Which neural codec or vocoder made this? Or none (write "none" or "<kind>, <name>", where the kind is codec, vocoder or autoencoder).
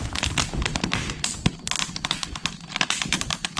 none